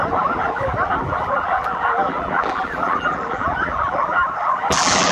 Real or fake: fake